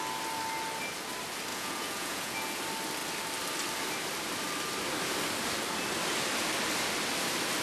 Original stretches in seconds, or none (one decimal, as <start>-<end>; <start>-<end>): 0.0-1.5; 2.6-7.6

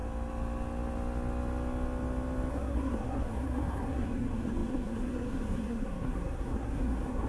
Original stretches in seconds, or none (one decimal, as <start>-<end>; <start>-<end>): 0.0-2.5

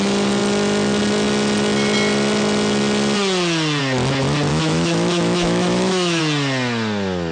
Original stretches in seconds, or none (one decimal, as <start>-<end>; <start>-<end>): 0.0-4.5; 6.2-7.3

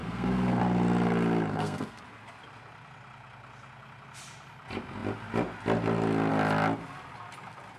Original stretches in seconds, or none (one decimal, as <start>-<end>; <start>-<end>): 0.6-1.5; 2.0-7.8

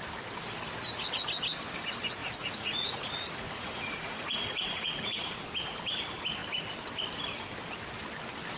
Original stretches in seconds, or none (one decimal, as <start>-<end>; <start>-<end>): 0.0-2.2; 5.4-8.6